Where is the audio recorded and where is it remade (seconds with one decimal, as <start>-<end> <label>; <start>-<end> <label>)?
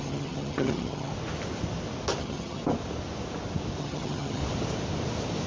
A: 0.0-1.1 remade; 1.1-2.2 recorded; 2.2-2.6 remade; 2.6-3.8 recorded; 3.8-4.4 remade; 4.4-5.5 recorded